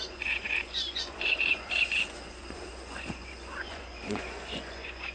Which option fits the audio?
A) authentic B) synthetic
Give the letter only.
B